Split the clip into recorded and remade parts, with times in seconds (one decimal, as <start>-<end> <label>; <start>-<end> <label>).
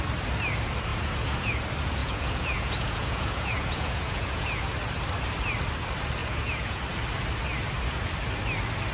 0.0-0.9 recorded; 0.9-1.6 remade; 1.6-2.0 recorded; 2.0-4.6 remade; 4.6-6.2 recorded; 6.2-6.8 remade; 6.8-8.9 recorded